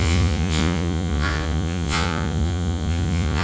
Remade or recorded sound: remade